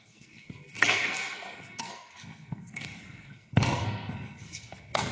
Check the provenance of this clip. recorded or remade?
remade